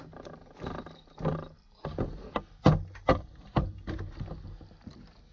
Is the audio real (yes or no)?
yes